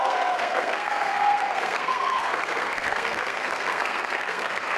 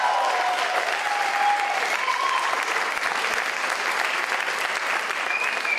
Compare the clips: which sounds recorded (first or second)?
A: second